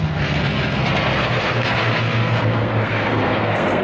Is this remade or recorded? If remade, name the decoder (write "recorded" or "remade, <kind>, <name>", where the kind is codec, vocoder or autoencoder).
remade, codec, SNAC